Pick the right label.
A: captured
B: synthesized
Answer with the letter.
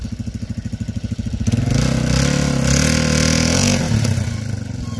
A